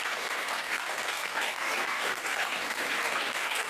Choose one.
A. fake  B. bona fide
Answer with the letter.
A